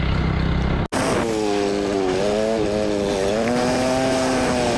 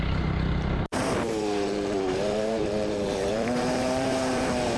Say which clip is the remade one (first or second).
second